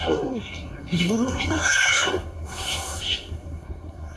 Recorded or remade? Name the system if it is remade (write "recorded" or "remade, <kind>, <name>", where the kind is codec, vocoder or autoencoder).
remade, codec, SNAC